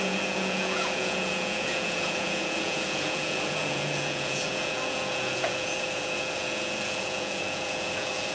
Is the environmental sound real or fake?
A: fake